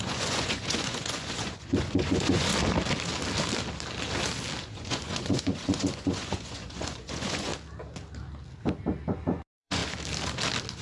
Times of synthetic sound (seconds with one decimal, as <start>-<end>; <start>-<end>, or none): 0.0-2.5; 4.6-7.5; 9.1-9.8